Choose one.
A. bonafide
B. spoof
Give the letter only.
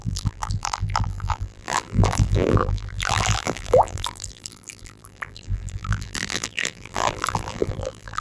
B